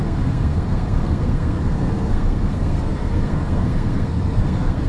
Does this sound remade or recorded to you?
remade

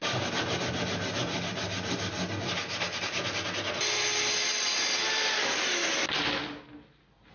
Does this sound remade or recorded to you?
recorded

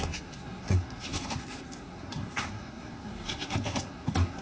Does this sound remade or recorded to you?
remade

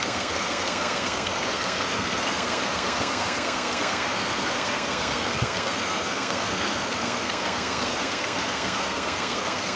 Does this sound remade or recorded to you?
remade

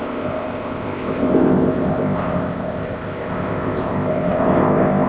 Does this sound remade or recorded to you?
remade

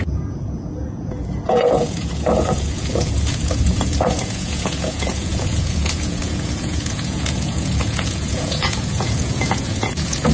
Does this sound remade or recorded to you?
remade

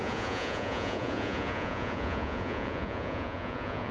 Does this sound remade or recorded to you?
remade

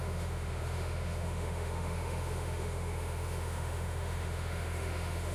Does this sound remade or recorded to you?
remade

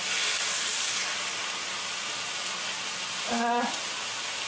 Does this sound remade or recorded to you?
recorded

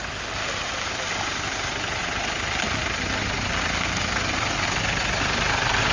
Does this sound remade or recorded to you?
recorded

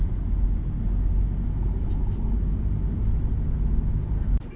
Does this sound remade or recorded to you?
recorded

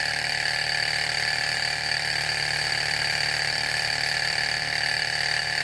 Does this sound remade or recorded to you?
remade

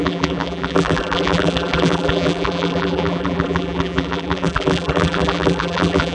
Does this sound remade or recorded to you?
remade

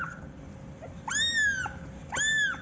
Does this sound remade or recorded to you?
recorded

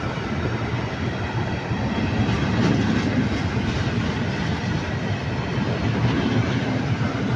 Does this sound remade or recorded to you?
recorded